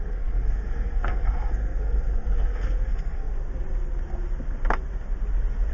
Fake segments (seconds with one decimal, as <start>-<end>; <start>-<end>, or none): 0.0-3.3